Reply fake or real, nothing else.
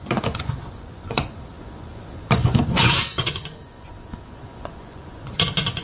fake